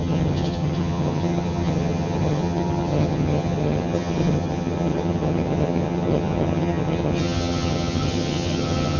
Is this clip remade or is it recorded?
remade